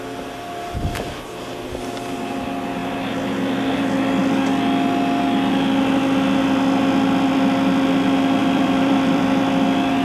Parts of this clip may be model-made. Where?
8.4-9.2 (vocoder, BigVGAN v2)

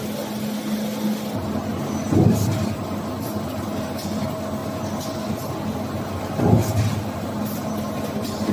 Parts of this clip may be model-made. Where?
none